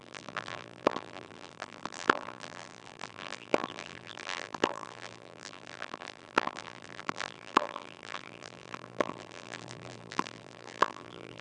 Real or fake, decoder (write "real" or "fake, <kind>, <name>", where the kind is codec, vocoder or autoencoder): fake, vocoder, BigVGAN v2